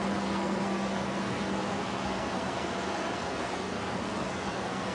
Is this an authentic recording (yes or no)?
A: no